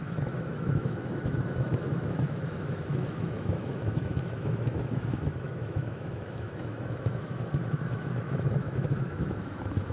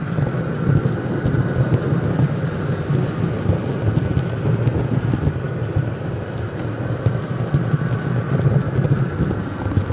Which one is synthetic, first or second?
first